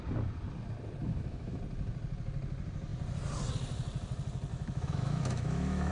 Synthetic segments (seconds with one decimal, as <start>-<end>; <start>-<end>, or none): 1.0-1.6; 4.5-5.9